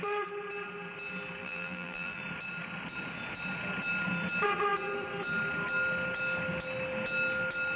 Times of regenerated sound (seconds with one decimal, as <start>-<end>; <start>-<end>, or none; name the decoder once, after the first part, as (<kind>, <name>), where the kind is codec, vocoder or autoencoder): 1.4-2.2 (vocoder, BigVGAN v2)